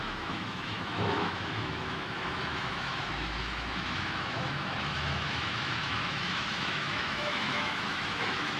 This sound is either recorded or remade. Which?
remade